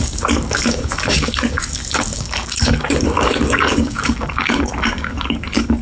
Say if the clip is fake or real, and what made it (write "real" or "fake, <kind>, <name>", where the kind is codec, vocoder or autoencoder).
fake, codec, DAC